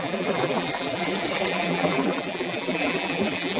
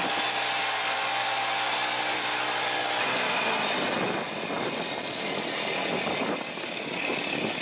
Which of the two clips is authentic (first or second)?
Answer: second